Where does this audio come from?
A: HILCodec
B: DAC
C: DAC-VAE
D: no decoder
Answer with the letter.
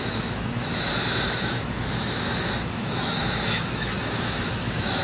C